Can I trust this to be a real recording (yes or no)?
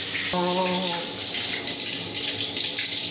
yes